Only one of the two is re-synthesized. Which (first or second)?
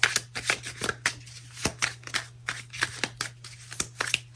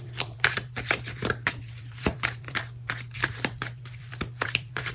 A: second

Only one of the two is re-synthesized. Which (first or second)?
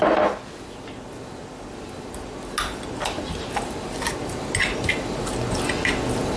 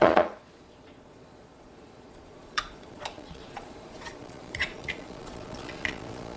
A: second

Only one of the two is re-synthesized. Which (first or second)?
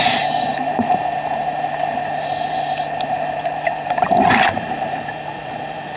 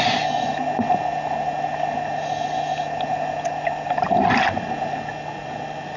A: first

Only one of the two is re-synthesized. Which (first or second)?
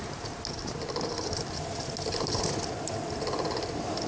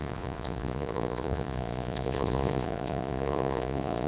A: second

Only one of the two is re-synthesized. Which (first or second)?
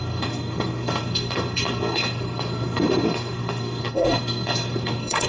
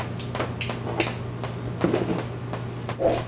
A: first